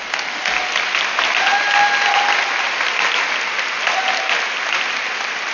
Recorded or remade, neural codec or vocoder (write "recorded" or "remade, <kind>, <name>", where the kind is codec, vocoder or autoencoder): recorded